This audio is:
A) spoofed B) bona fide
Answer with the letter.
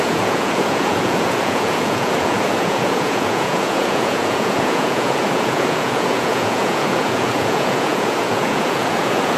A